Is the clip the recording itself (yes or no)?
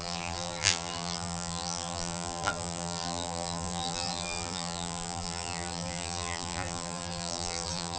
no